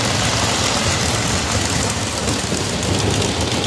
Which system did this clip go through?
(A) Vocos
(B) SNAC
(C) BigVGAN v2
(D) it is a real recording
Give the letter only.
D